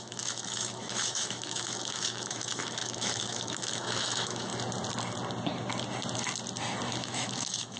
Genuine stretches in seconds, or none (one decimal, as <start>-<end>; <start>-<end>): 4.5-7.0